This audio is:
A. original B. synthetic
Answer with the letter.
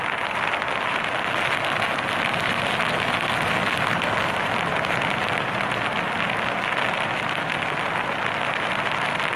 A